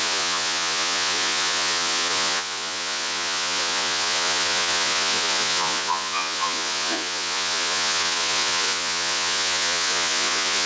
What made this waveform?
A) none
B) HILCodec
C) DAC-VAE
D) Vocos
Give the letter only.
D